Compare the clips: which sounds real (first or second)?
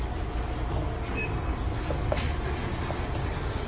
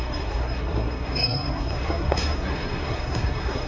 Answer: first